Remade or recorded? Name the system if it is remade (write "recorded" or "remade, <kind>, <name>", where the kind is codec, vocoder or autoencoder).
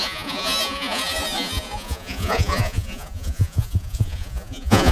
remade, vocoder, Vocos